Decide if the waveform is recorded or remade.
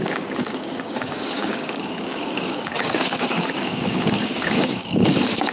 remade